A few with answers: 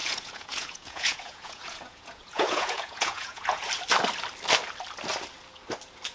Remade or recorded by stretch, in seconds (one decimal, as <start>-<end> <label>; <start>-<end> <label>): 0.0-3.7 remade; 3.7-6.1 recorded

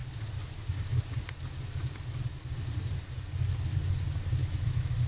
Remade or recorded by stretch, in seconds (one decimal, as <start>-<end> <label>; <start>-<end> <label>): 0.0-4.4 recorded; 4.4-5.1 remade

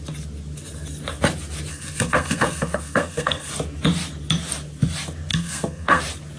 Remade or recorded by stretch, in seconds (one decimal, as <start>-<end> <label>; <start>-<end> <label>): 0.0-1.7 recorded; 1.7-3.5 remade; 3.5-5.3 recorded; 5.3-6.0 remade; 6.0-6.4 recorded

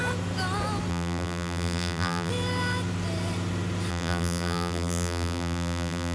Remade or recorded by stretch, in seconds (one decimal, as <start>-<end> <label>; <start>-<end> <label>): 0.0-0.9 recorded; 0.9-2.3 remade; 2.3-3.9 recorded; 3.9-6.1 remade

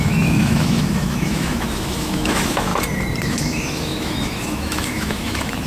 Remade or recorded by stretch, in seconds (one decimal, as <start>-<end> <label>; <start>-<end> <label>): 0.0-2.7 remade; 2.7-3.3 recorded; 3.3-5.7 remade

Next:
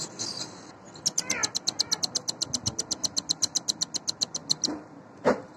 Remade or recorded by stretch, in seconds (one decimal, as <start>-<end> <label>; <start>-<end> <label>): 0.0-5.6 recorded

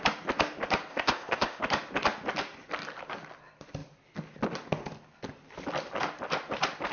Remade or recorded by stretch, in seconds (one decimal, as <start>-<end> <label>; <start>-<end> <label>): 0.0-0.9 recorded; 0.9-1.6 remade; 1.6-6.9 recorded